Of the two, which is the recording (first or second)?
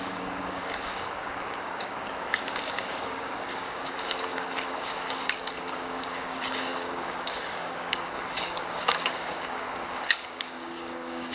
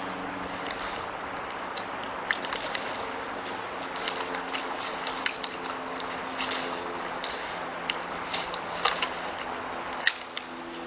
second